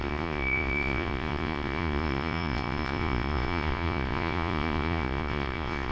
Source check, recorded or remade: remade